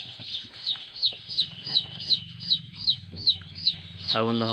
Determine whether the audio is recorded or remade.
remade